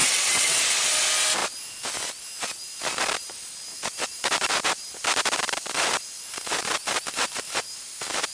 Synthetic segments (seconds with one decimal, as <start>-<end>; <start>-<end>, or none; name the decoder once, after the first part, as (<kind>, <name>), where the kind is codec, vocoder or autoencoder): 0.0-0.6 (vocoder, WaveNeXt)